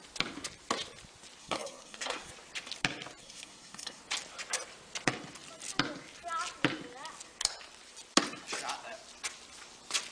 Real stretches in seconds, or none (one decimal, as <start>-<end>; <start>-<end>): 0.0-1.4; 2.3-3.2; 4.0-10.1